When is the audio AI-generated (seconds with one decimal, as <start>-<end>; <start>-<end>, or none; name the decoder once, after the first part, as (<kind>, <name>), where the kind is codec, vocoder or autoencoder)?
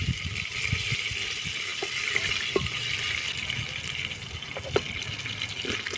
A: none